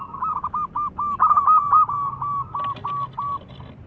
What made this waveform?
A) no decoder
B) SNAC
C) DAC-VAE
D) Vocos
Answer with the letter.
A